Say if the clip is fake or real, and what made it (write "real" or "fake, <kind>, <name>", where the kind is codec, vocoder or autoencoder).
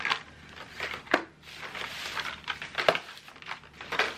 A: real